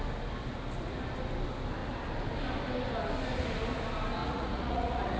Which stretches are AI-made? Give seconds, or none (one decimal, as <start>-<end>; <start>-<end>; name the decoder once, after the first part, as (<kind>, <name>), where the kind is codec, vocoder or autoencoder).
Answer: 4.2-5.2 (vocoder, Vocos)